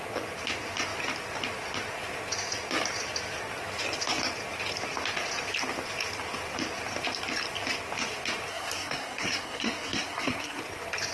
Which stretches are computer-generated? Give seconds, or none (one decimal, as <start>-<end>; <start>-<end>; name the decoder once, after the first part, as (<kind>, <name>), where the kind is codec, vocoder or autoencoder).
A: 8.5-10.6 (codec, SNAC)